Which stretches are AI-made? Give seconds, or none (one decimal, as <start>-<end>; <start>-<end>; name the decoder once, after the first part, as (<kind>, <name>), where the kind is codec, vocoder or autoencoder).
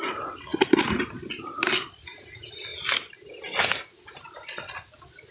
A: none